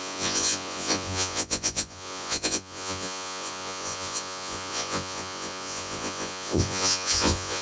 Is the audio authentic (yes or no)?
no